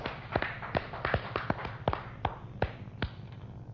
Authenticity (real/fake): real